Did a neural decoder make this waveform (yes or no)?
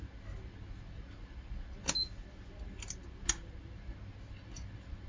no